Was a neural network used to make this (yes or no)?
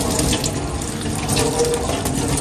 no